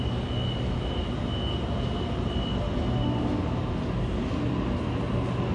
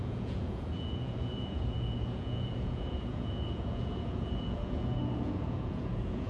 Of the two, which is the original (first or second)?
first